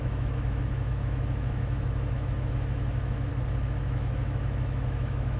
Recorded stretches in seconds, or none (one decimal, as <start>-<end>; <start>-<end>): 3.3-3.8

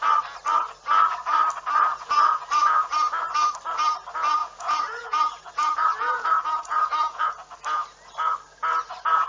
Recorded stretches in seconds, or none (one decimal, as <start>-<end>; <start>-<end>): 0.0-1.9; 2.9-4.4; 7.3-9.3

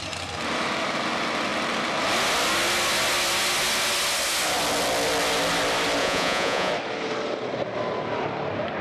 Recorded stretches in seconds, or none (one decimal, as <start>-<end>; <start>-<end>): 0.0-6.0; 6.7-8.8

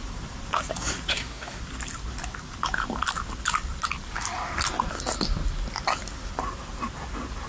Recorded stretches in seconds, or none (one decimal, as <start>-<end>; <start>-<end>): 0.0-1.1; 1.6-7.5

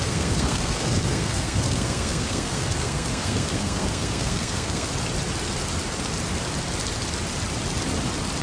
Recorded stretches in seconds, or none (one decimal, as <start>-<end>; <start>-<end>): 4.9-8.4

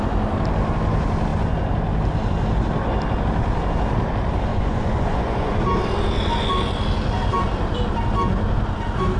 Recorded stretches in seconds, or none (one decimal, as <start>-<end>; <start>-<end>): 0.0-4.5; 5.6-9.2

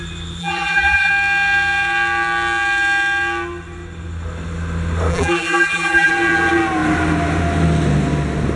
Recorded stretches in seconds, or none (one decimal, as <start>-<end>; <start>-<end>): 0.0-0.4; 1.1-5.1; 6.1-8.6

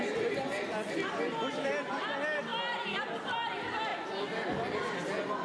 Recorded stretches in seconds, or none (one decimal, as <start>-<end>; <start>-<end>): 0.0-5.4